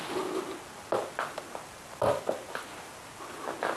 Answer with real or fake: real